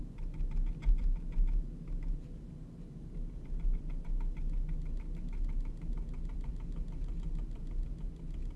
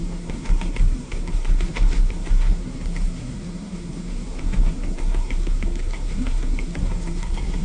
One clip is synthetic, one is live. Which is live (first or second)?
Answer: first